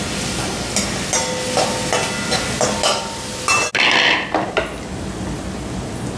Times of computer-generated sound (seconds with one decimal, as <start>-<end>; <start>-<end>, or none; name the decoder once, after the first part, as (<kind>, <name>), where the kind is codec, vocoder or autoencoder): none